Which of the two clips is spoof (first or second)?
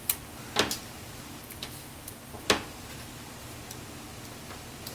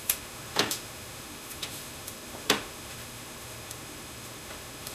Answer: second